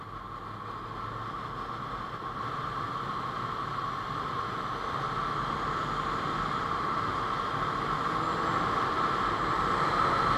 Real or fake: real